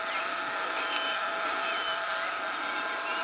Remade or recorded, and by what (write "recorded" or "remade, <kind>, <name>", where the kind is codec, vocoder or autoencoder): recorded